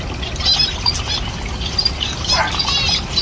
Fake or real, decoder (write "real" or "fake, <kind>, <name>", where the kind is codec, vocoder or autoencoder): real